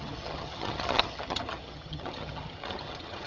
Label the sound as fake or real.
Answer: fake